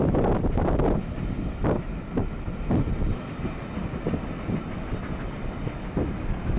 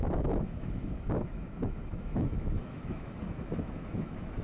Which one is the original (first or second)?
first